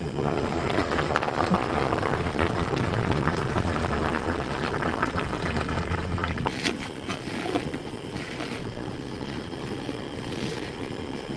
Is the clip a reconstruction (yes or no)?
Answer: yes